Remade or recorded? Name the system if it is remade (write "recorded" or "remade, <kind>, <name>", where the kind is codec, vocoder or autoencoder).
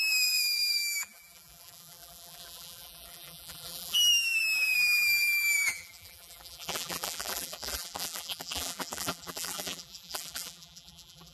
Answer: remade, vocoder, BigVGAN v2